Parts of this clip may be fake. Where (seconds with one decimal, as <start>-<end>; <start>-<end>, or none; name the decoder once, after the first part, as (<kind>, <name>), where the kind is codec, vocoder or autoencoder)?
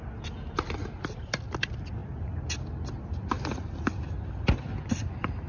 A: none